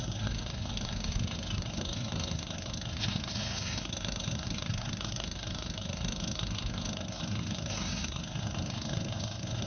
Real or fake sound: fake